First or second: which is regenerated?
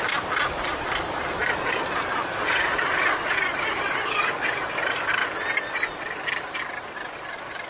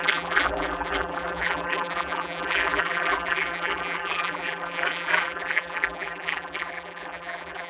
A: second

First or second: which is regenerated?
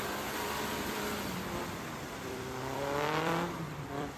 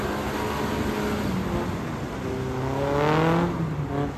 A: first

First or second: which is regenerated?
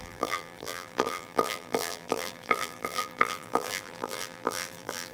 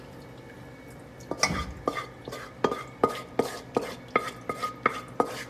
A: first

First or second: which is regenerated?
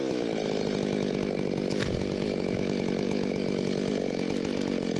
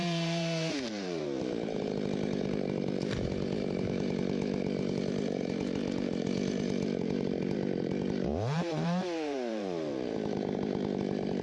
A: second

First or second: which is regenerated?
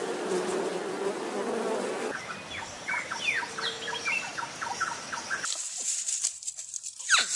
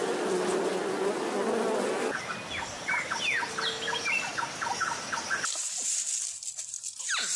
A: first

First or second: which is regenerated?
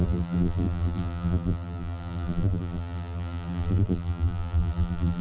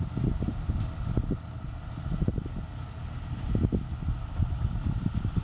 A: first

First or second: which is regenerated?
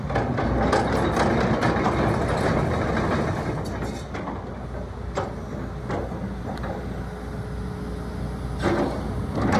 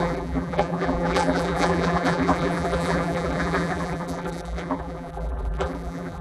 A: second